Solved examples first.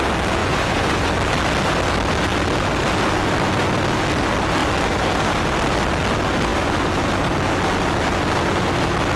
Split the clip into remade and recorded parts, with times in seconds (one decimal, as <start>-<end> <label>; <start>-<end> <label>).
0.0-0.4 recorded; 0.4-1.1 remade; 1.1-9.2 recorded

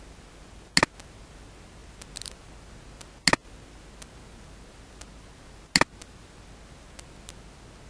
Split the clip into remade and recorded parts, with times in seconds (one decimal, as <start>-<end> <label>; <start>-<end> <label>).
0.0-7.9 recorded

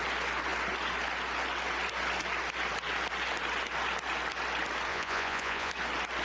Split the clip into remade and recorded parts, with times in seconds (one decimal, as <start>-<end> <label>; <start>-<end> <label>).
0.0-4.9 recorded; 4.9-5.7 remade; 5.7-6.2 recorded

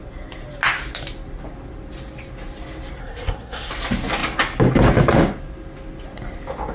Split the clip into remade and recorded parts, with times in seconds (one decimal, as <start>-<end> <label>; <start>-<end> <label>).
0.0-3.0 recorded; 3.0-3.7 remade; 3.7-6.7 recorded

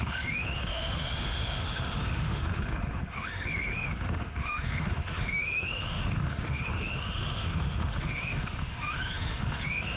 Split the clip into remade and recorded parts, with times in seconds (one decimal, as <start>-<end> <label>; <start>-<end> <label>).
0.0-10.0 remade

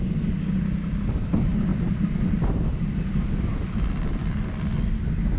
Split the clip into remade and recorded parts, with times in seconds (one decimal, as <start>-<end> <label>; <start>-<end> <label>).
0.0-5.4 recorded